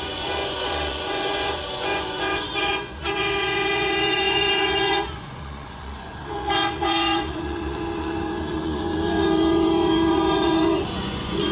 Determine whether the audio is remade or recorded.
remade